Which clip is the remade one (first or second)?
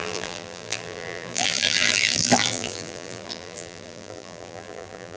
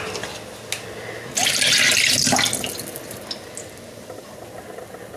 first